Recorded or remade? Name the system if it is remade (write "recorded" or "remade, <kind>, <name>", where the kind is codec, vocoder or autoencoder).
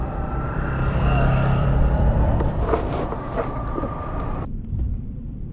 remade, vocoder, BigVGAN v2